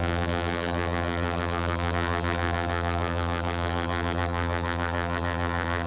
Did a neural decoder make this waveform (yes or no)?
yes